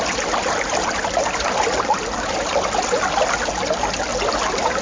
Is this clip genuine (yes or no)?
yes